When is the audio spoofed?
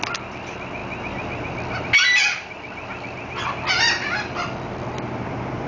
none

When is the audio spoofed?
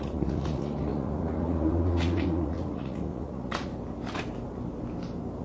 0.0-3.7 (vocoder, Vocos)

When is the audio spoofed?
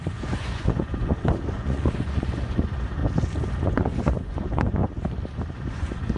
0.0-3.0 (vocoder, Vocos); 3.6-4.8; 5.5-6.2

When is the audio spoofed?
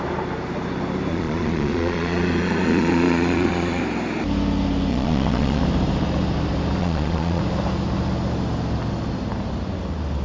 1.1-3.8 (vocoder, Vocos); 4.9-5.6; 6.8-7.4